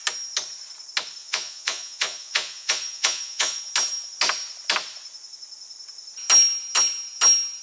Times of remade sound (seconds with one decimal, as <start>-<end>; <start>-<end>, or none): 1.2-3.6